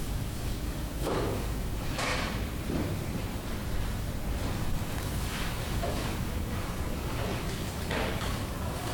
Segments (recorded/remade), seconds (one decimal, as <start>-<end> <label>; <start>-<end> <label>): 0.0-2.1 remade; 2.1-4.6 recorded; 4.6-8.9 remade